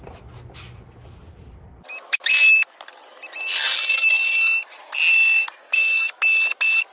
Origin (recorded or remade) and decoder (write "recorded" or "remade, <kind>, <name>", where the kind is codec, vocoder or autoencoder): recorded